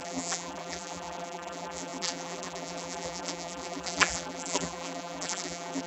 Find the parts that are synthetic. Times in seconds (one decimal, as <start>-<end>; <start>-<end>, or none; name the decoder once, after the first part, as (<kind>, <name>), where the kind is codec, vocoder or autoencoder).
0.0-5.9 (vocoder, BigVGAN v2)